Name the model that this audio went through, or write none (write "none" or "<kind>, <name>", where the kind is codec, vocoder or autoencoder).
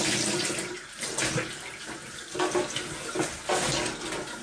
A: none